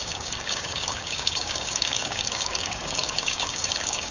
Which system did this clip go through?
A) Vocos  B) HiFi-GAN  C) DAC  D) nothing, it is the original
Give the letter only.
C